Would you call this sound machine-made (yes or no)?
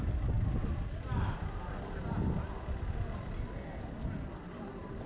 no